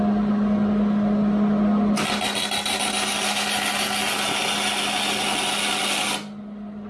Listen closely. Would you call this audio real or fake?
real